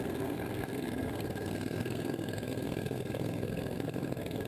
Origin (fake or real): fake